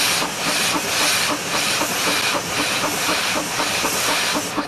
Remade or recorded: recorded